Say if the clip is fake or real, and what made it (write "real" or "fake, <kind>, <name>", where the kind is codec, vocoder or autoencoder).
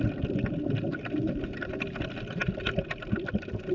real